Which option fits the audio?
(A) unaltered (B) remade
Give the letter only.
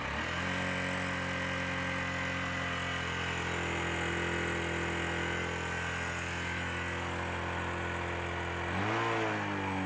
A